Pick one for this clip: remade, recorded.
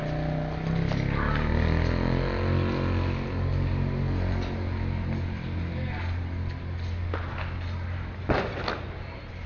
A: recorded